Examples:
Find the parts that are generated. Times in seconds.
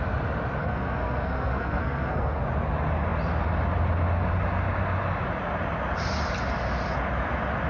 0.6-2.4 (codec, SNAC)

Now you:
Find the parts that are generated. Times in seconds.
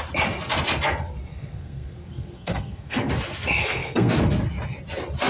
1.3-3.1 (codec, SNAC); 3.6-4.1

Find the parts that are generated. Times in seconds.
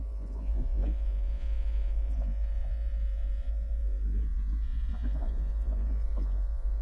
0.0-6.8 (vocoder, Vocos)